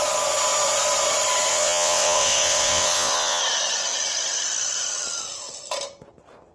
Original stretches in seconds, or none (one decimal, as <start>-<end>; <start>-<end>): 0.0-1.5; 3.4-6.5